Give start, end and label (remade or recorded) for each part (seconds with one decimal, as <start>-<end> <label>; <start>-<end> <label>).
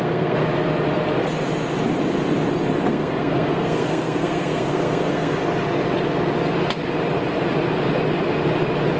0.0-0.4 remade; 0.4-2.9 recorded; 2.9-5.4 remade; 5.4-9.0 recorded